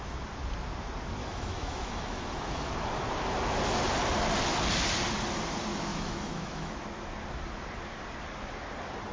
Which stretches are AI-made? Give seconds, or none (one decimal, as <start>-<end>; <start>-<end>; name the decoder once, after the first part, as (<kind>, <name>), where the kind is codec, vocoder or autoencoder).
1.2-2.7 (autoencoder, DAC-VAE); 5.9-6.7